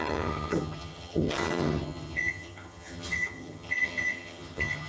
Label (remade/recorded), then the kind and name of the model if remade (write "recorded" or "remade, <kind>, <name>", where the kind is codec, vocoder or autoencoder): remade, vocoder, HiFi-GAN